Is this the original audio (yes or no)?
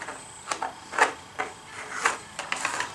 yes